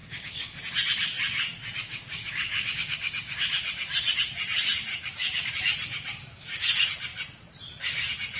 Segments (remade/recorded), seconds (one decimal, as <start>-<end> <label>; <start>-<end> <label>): 0.0-0.6 remade; 0.6-1.8 recorded; 1.8-3.5 remade; 3.5-4.9 recorded; 4.9-5.5 remade; 5.5-8.4 recorded